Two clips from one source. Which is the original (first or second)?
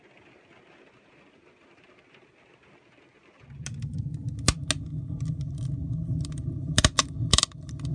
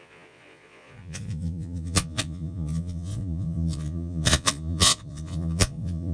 first